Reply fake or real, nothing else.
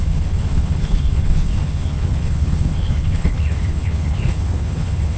fake